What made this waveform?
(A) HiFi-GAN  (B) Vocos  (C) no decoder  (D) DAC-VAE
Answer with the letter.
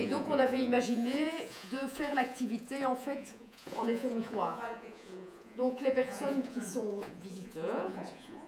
B